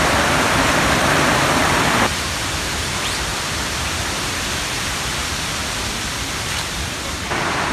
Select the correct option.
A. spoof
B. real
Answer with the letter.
A